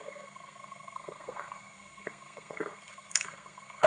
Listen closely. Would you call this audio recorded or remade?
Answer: remade